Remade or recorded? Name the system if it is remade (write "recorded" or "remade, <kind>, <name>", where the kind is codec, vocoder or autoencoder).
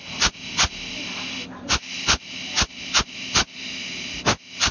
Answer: recorded